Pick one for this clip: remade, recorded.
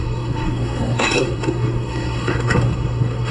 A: remade